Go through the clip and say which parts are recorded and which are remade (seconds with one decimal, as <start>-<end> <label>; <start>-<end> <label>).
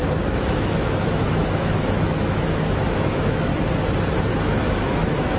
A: 0.0-3.5 remade; 3.5-4.3 recorded; 4.3-5.4 remade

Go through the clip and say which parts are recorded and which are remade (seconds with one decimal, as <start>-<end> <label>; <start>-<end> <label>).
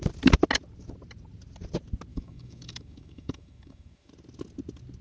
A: 0.0-2.1 recorded; 2.1-4.1 remade; 4.1-5.0 recorded